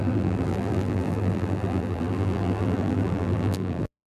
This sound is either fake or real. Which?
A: fake